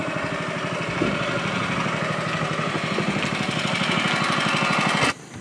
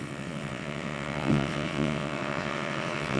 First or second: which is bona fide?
first